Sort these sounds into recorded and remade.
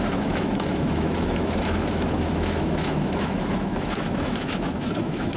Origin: remade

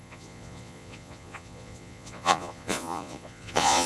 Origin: remade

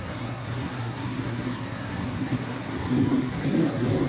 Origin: remade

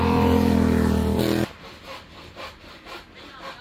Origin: recorded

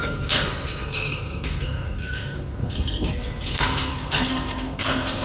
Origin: remade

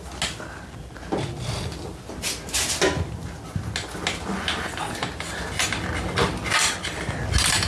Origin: recorded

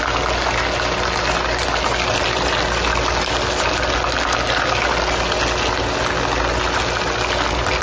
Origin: recorded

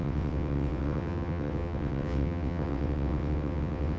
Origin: remade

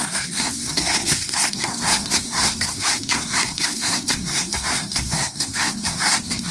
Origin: remade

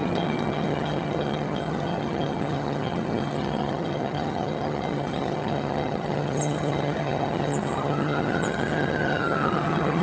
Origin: remade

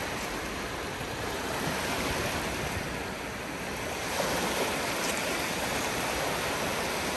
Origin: recorded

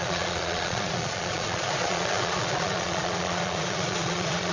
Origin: remade